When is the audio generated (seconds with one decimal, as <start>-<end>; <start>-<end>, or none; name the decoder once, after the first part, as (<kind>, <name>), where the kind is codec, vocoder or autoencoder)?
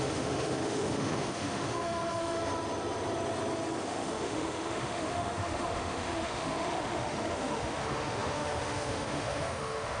0.0-2.4 (autoencoder, DAC-VAE); 3.8-10.0